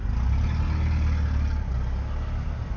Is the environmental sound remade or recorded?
recorded